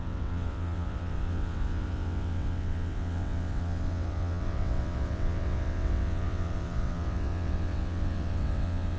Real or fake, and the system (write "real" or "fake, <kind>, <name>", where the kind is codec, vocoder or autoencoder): fake, vocoder, WaveNeXt